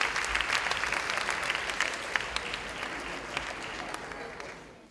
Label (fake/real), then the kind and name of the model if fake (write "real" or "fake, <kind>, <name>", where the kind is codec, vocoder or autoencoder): real